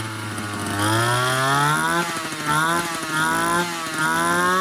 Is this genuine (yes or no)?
yes